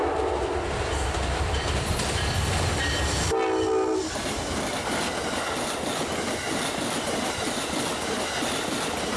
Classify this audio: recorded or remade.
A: recorded